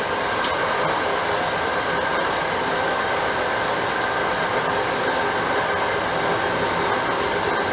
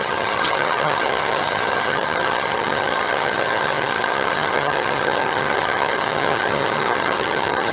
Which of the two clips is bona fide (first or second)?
first